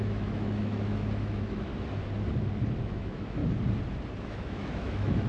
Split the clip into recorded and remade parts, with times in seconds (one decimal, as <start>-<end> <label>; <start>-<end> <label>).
0.0-1.7 remade; 1.7-2.8 recorded; 2.8-3.4 remade; 3.4-4.2 recorded; 4.2-5.3 remade